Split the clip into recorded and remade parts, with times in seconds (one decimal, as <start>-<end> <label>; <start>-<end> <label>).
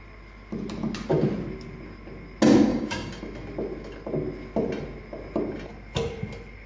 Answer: 0.0-2.7 recorded; 2.7-3.2 remade; 3.2-6.7 recorded